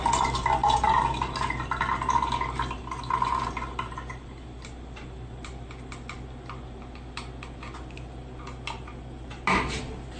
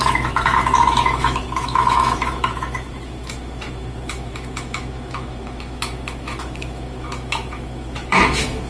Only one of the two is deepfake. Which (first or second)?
second